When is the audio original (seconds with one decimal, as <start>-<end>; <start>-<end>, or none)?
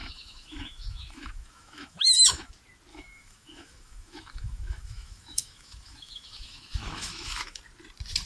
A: 2.5-2.9; 7.6-8.3